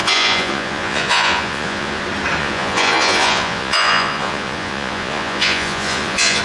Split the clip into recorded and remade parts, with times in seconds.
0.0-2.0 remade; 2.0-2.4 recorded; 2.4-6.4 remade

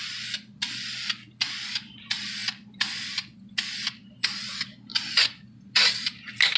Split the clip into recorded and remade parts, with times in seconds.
0.0-6.6 recorded